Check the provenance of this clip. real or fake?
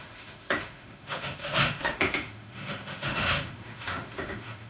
fake